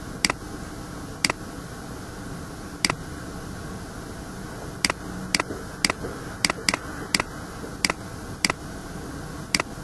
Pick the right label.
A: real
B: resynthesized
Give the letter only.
A